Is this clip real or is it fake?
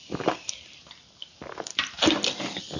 real